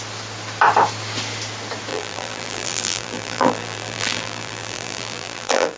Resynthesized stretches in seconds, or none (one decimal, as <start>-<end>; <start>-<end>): 1.9-5.8